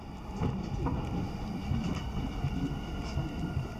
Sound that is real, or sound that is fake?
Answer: real